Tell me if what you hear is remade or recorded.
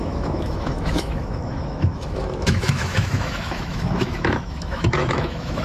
remade